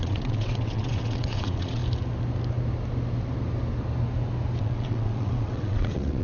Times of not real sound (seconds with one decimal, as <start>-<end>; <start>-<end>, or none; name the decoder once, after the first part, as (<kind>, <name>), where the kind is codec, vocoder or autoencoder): 0.0-1.8 (vocoder, WaveNeXt); 4.6-6.2